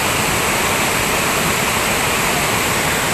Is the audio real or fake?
real